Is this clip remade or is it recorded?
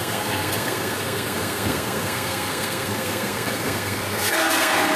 remade